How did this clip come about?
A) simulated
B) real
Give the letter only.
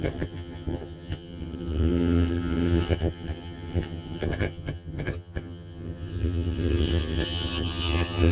A